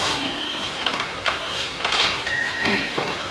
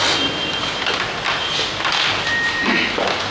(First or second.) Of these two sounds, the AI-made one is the first